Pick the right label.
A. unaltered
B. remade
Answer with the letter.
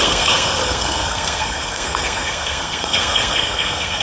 B